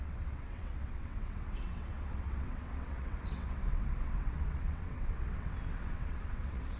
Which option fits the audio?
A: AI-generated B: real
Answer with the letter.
A